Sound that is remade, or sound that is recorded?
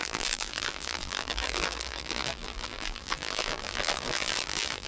remade